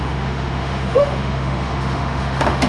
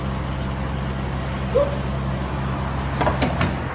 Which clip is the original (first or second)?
second